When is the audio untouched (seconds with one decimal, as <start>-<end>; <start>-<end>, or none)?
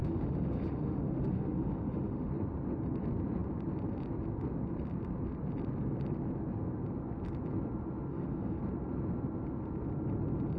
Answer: 2.3-8.1; 8.6-10.6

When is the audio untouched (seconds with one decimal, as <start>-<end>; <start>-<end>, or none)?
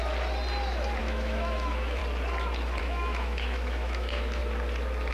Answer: 0.0-1.0; 2.0-2.8; 4.4-5.1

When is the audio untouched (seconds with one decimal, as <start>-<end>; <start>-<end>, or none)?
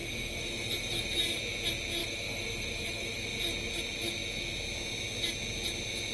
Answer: 1.2-2.0; 3.2-6.1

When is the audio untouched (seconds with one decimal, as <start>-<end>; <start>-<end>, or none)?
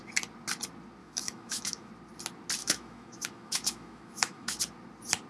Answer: 0.0-1.0; 1.9-2.6; 4.6-5.3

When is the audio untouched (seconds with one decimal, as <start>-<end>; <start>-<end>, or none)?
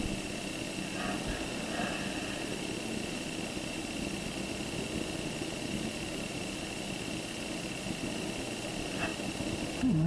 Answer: 0.0-10.1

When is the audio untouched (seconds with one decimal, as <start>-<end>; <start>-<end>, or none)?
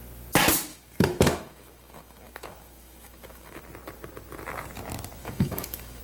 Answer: 0.0-0.7; 3.6-5.2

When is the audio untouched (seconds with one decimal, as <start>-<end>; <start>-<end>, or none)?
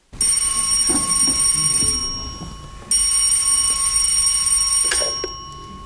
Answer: 0.0-5.9